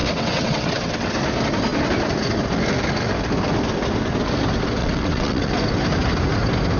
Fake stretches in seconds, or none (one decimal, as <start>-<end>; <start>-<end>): 0.0-1.1; 4.8-5.5